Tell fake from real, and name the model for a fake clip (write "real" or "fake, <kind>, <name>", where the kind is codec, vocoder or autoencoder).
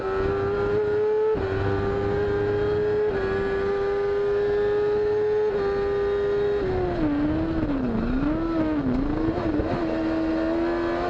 real